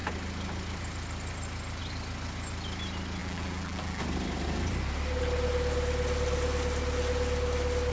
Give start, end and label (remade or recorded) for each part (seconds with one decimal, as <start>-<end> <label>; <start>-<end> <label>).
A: 0.0-3.2 recorded; 3.2-4.0 remade; 4.0-7.9 recorded